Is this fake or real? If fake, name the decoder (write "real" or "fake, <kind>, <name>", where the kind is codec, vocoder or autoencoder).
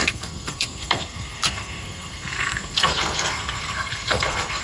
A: fake, codec, SNAC